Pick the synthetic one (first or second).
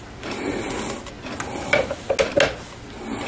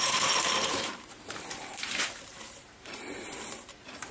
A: second